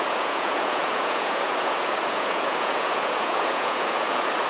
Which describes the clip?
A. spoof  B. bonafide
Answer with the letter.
A